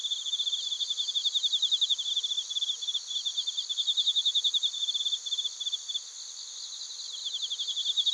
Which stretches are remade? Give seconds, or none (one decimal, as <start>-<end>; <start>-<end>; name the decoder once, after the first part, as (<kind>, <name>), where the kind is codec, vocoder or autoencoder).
none